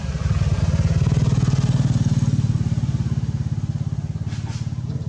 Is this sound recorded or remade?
recorded